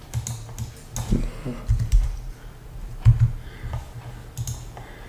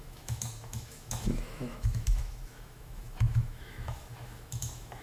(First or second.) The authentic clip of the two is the first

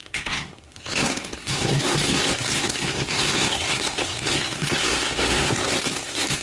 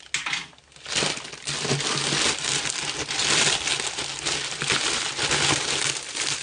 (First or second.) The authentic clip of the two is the second